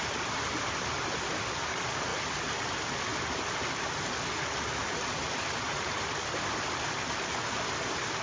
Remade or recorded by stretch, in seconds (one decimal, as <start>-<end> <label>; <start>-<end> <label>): 0.0-8.2 recorded